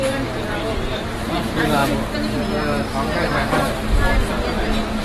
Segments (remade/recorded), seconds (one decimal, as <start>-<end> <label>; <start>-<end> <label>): 0.0-1.8 remade; 1.8-5.0 recorded